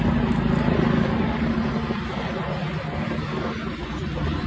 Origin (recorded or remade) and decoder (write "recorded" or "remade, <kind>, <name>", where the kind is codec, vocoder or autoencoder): recorded